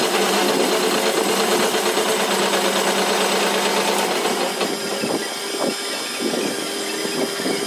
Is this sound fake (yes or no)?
no